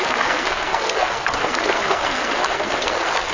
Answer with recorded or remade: remade